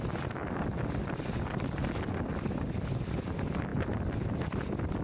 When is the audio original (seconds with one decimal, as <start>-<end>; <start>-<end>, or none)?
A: 0.0-5.0